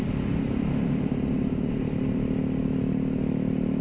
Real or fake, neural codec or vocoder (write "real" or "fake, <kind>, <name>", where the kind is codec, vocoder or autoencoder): real